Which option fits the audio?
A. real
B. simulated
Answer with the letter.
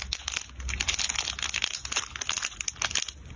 A